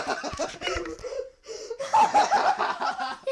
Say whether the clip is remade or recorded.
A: remade